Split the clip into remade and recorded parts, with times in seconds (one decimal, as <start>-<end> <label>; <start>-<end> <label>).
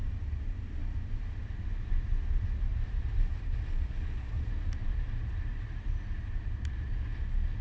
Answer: 0.0-2.7 recorded; 2.7-7.1 remade; 7.1-7.6 recorded